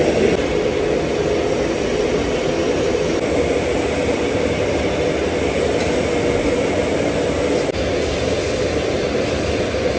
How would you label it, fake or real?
real